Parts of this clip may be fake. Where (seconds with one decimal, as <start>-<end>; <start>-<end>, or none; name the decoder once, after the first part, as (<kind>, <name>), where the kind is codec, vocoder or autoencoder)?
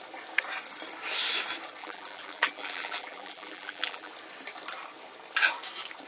1.8-4.1 (vocoder, BigVGAN v2)